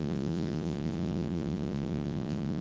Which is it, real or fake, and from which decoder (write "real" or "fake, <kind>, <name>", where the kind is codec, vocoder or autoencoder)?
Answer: fake, vocoder, Vocos